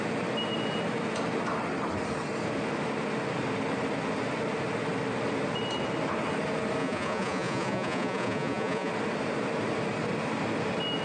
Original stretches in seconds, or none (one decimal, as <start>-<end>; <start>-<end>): 0.0-6.8; 8.9-11.0